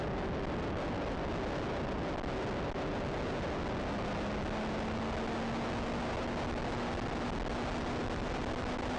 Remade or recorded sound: recorded